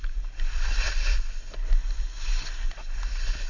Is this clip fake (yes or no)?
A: no